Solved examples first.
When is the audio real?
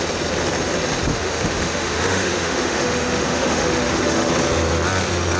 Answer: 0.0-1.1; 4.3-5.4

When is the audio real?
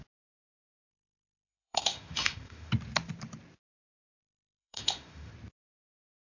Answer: 0.0-0.9; 2.7-4.2; 5.3-6.4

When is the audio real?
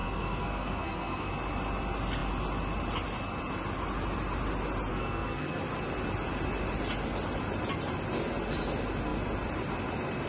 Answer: 1.3-4.9; 5.6-10.3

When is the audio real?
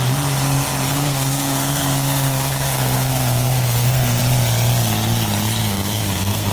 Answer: 0.0-0.9; 4.2-5.6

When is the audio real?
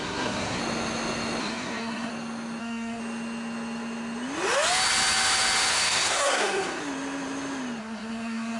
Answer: 0.6-1.4; 2.1-2.6; 3.0-5.7; 6.8-7.8